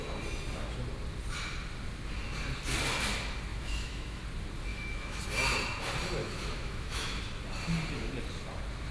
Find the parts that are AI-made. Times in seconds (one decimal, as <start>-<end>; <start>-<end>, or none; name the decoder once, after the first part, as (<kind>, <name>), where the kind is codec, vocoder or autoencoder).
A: 3.5-4.2 (autoencoder, DAC-VAE); 4.7-5.2; 6.2-7.2